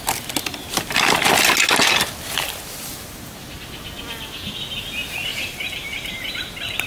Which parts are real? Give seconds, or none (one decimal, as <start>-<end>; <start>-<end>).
0.0-5.3; 6.3-6.9